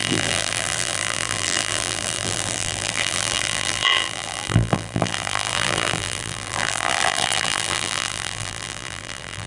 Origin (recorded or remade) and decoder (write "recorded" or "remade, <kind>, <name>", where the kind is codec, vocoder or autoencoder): remade, vocoder, BigVGAN v2